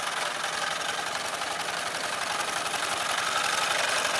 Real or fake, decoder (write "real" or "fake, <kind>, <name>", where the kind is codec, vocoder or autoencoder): real